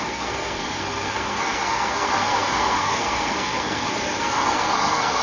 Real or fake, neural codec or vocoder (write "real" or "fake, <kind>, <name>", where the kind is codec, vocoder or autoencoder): fake, codec, SNAC